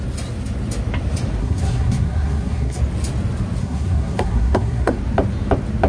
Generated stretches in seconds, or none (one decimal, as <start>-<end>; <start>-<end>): 1.4-2.8; 3.6-5.0